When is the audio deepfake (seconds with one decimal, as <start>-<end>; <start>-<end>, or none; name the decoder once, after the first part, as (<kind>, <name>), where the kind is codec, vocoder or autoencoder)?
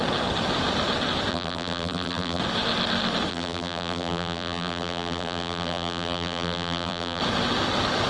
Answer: 1.3-2.4 (vocoder, BigVGAN v2); 3.3-7.2